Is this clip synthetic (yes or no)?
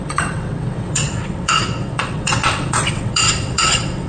yes